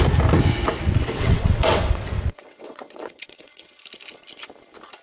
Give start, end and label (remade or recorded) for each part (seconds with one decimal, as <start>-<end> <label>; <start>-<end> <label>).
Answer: 0.0-0.8 recorded; 0.8-3.8 remade; 3.8-5.0 recorded